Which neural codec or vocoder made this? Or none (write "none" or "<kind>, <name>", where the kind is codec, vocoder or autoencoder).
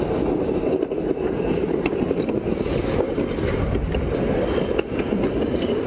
none